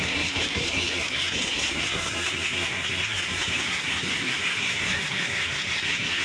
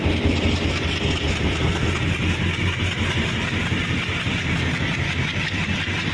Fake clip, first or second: first